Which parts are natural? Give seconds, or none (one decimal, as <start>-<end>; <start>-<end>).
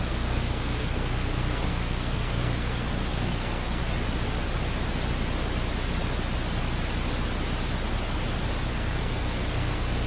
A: 3.8-8.7